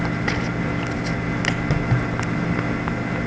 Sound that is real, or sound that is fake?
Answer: real